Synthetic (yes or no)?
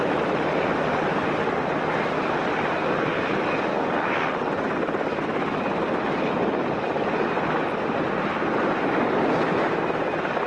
no